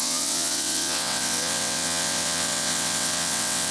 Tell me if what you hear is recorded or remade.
remade